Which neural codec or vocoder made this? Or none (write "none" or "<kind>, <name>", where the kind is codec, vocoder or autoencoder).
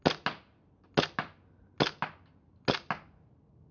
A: none